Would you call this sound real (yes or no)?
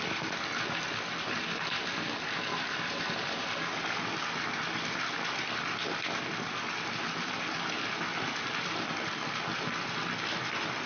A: yes